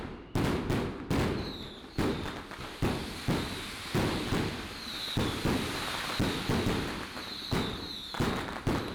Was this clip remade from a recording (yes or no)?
no